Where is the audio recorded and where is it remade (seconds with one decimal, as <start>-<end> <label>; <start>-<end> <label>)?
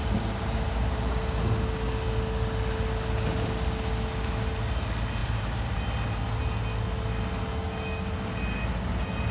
0.0-1.2 remade; 1.2-5.2 recorded; 5.2-5.8 remade; 5.8-9.3 recorded